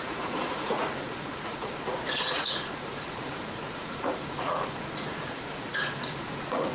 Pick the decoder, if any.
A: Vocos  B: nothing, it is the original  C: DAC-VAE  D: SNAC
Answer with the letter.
A